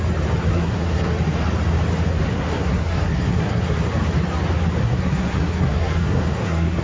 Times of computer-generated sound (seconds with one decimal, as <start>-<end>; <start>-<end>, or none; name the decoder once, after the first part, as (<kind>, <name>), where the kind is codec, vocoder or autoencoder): 0.5-1.1 (codec, SNAC); 2.3-3.8; 4.8-6.8